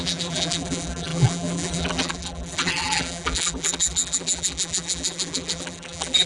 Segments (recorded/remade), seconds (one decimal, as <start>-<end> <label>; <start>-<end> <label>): 0.0-6.3 remade